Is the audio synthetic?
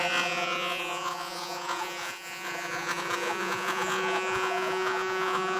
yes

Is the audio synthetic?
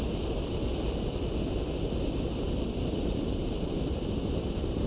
no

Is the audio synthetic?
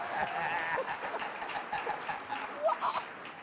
no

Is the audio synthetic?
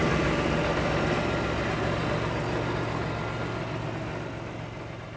no